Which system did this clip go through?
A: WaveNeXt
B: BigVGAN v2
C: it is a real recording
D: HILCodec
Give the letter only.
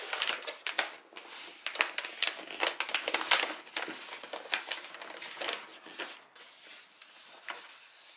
C